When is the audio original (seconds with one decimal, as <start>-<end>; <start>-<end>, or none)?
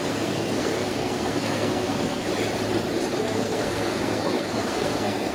2.3-3.2